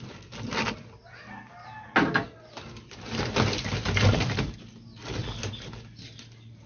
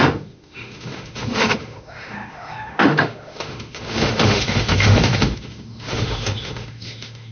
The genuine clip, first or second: first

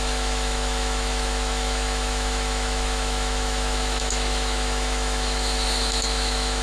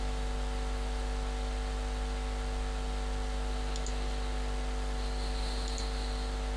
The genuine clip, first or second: second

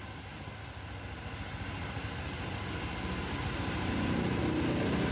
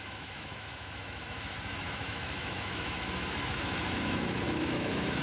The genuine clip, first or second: first